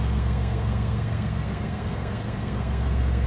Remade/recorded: remade